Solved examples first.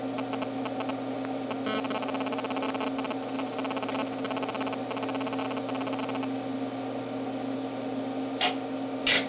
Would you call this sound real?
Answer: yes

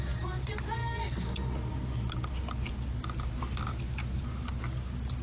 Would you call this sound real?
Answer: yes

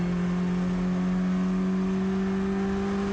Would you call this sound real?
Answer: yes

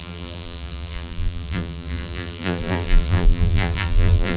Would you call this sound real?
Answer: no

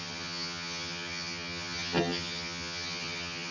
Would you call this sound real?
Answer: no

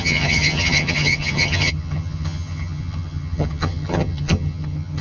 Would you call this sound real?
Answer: no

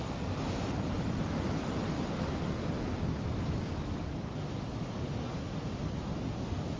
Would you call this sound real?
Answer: yes